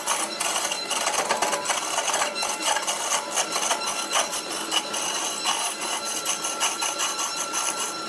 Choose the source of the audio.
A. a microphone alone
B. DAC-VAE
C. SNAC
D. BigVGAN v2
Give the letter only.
D